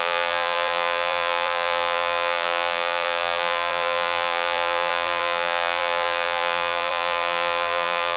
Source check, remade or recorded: remade